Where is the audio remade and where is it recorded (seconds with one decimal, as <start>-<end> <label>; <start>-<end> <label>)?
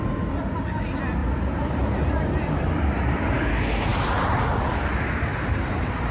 0.0-1.2 recorded; 1.2-3.5 remade; 3.5-6.1 recorded